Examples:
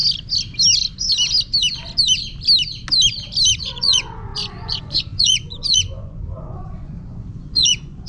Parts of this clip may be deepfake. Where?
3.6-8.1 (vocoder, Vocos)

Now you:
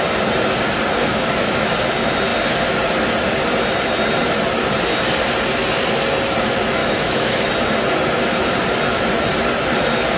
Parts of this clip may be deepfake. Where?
1.1-1.7 (autoencoder, DAC-VAE); 6.8-7.5

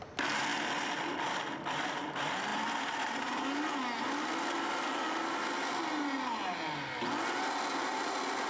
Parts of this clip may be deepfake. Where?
none